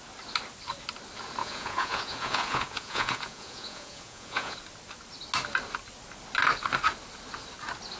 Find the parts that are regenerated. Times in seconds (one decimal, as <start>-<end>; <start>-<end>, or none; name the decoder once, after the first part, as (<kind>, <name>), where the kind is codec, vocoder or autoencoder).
1.4-4.6 (vocoder, Vocos)